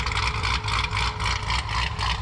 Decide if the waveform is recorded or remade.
recorded